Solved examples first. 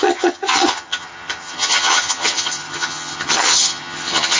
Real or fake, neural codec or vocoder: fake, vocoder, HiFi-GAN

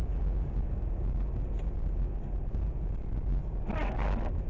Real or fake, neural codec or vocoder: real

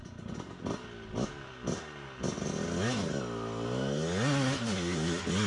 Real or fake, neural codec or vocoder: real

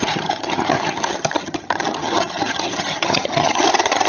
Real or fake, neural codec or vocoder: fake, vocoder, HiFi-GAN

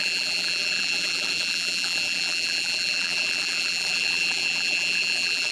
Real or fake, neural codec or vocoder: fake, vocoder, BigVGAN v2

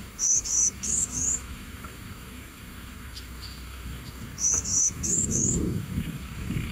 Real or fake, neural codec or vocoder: fake, codec, DAC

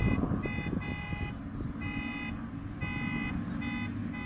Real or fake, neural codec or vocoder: real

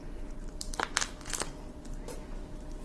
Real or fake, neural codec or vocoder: real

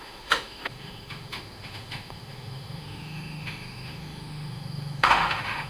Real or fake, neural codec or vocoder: fake, autoencoder, DAC-VAE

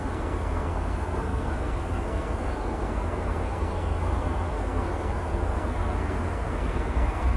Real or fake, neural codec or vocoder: fake, codec, SNAC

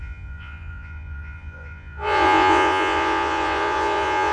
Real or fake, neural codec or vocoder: fake, vocoder, Vocos